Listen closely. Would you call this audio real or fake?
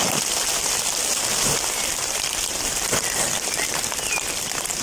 fake